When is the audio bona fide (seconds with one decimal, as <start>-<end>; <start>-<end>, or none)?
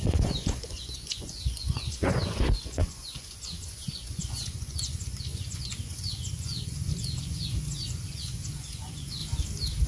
9.2-9.9